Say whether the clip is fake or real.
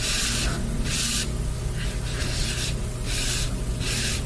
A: real